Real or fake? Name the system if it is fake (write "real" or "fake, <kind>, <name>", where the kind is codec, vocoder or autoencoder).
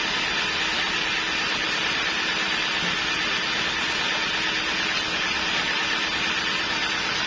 real